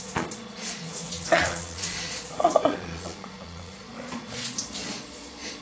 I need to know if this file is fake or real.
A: fake